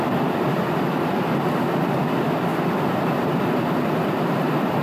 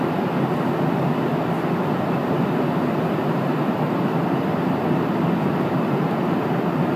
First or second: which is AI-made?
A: first